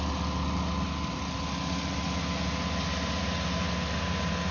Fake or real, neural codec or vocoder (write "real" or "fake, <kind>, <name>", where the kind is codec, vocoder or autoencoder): real